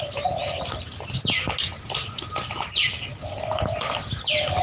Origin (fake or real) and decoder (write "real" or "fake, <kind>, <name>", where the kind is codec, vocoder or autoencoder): real